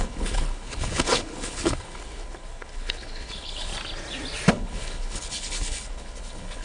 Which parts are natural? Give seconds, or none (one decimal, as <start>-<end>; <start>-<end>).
3.7-4.5

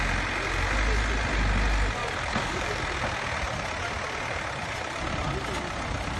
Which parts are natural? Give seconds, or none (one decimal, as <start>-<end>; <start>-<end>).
0.0-2.0; 2.8-6.2

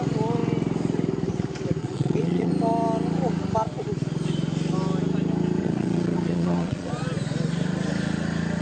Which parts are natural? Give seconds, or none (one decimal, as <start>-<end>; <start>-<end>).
0.0-1.8; 2.5-5.6; 6.9-8.6

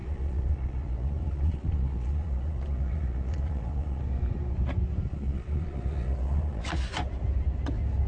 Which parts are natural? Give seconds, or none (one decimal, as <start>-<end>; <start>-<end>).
4.0-5.1; 6.7-8.1